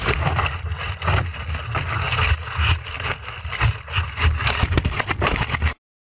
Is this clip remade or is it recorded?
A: recorded